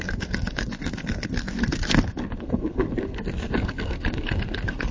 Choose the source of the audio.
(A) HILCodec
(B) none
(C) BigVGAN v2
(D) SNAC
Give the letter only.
D